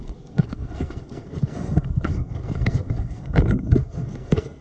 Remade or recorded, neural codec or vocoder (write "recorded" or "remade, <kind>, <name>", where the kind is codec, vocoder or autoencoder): remade, codec, SNAC